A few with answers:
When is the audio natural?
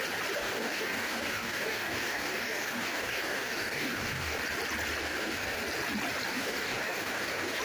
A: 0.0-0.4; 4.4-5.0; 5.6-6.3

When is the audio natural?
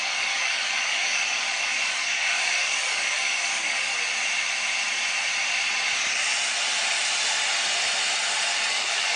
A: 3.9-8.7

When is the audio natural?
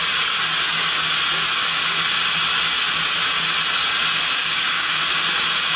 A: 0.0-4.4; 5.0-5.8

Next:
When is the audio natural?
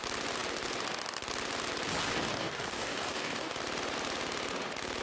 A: 0.0-2.4; 3.5-5.0